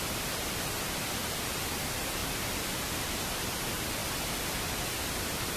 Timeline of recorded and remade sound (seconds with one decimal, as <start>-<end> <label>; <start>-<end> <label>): 0.0-2.2 recorded; 2.2-3.1 remade; 3.1-5.6 recorded